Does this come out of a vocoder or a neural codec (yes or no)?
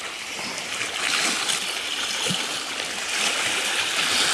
no